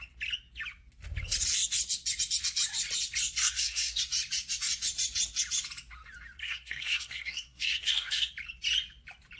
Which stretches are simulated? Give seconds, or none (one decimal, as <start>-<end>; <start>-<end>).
3.4-4.0; 6.4-8.3